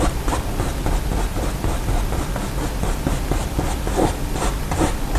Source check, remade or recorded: recorded